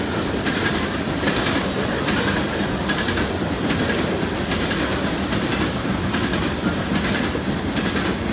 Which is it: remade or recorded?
recorded